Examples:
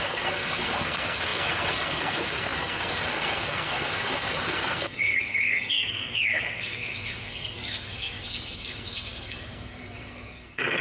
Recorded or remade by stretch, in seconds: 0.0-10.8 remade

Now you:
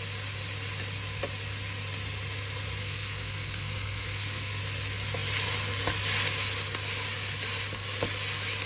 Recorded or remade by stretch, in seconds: 0.0-2.8 recorded; 2.8-4.6 remade; 4.6-8.7 recorded

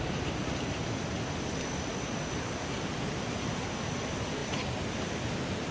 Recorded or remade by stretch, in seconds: 0.0-5.7 recorded

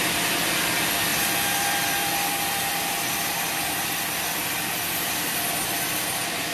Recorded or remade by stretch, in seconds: 0.0-6.5 recorded

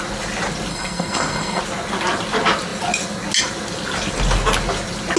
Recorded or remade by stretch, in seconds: 0.0-0.7 recorded; 0.7-1.6 remade; 1.6-5.2 recorded

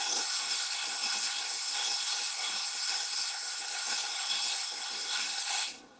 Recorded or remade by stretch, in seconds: 0.0-6.0 remade